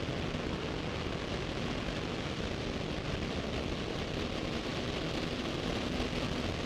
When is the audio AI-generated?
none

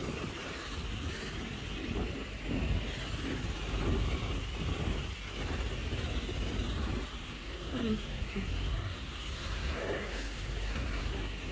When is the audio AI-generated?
7.2-11.5 (codec, SNAC)

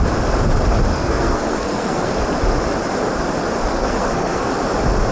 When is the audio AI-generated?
0.9-2.1 (codec, SNAC); 3.7-4.5

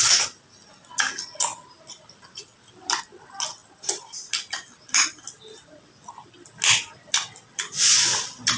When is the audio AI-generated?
none

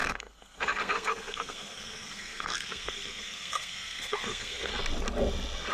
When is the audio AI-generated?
0.0-4.7 (codec, SNAC)

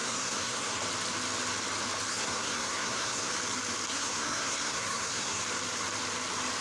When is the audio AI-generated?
0.0-0.8 (codec, SNAC); 2.1-3.3; 3.9-5.4

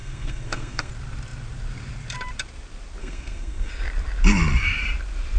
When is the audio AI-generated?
0.0-0.9 (codec, SNAC); 3.0-3.7